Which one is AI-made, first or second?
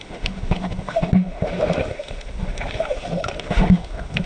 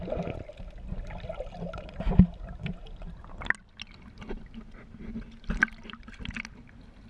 first